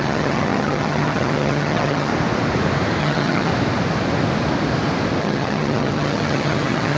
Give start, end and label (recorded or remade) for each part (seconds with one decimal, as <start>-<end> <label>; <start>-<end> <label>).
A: 0.0-2.1 remade; 2.1-3.0 recorded; 3.0-3.5 remade; 3.5-5.2 recorded; 5.2-7.0 remade